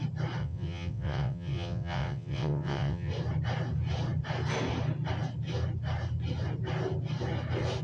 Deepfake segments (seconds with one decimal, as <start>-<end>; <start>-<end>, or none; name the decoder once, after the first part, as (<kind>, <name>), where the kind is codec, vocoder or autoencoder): 0.4-3.1 (vocoder, WaveNeXt)